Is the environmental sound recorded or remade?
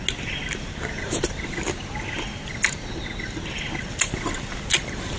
recorded